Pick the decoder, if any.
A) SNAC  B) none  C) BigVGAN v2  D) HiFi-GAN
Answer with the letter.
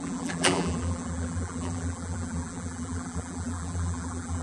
C